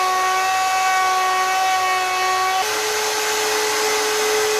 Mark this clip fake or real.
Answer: real